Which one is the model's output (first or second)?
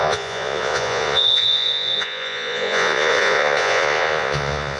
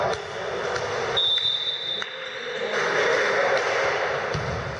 first